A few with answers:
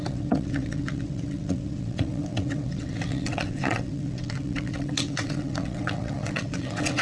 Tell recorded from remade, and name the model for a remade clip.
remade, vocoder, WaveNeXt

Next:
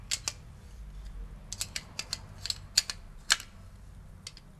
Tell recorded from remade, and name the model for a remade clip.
recorded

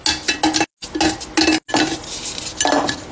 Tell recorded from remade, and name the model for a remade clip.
recorded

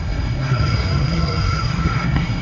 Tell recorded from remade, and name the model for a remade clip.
remade, codec, SNAC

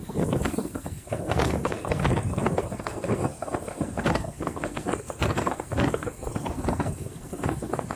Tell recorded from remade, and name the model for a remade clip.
remade, codec, SNAC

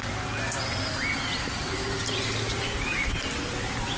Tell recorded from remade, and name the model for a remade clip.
recorded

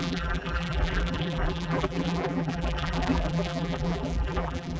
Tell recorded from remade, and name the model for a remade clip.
remade, vocoder, BigVGAN v2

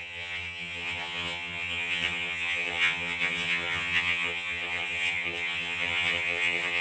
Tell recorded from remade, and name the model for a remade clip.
remade, vocoder, HiFi-GAN